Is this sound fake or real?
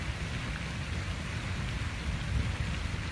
real